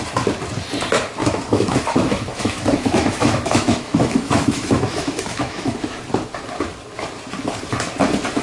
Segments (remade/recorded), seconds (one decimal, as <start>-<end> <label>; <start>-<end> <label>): 0.0-1.2 recorded; 1.2-6.0 remade; 6.0-8.4 recorded